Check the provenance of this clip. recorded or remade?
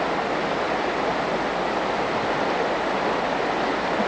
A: recorded